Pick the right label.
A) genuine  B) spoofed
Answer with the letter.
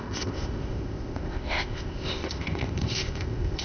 B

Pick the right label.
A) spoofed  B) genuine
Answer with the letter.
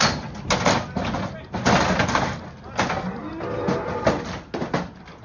B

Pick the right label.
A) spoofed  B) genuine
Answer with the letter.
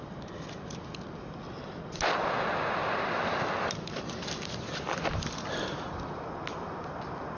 B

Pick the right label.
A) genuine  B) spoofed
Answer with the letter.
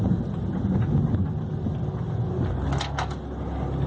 A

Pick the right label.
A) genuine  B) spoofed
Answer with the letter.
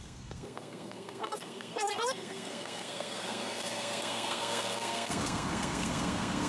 B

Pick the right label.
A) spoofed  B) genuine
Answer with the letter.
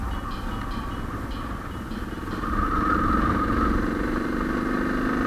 B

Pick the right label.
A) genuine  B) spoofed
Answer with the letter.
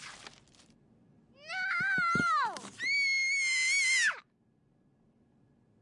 A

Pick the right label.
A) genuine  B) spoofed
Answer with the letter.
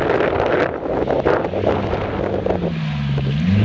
A